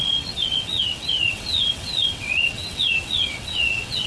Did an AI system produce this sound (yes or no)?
yes